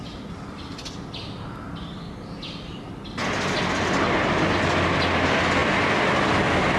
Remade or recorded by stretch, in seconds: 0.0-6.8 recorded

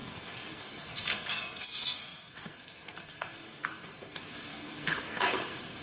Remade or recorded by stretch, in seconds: 0.0-5.8 remade